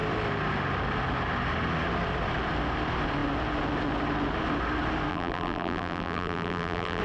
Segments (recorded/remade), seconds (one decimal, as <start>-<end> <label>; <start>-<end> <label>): 0.0-5.1 recorded; 5.1-7.0 remade